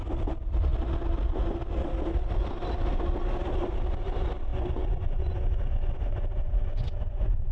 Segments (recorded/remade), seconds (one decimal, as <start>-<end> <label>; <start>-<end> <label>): 0.0-4.5 recorded; 4.5-7.5 remade